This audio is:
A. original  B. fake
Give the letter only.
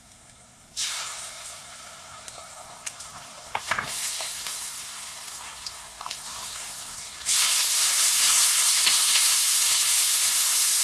B